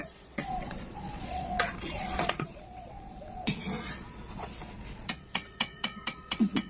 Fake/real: fake